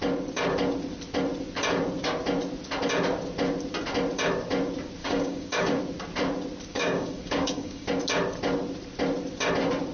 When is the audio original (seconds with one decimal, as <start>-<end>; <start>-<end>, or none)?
0.0-5.0; 5.8-6.7; 7.9-9.9